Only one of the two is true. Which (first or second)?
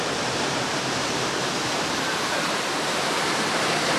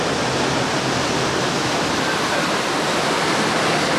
second